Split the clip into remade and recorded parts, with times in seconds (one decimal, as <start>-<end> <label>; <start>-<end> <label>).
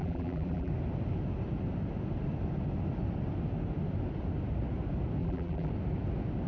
0.0-0.7 remade; 0.7-5.2 recorded; 5.2-5.7 remade; 5.7-6.5 recorded